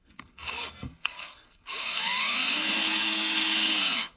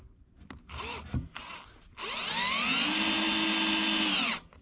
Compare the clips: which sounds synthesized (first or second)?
first